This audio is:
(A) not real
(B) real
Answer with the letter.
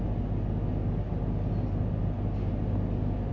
B